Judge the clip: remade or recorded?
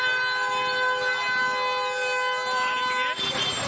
recorded